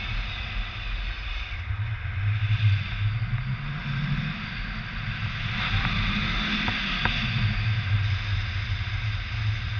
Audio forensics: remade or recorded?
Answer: recorded